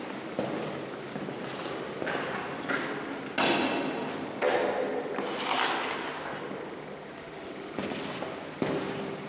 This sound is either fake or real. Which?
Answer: real